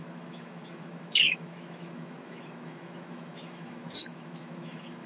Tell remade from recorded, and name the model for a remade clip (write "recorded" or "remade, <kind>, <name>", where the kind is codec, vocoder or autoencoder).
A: remade, autoencoder, DAC-VAE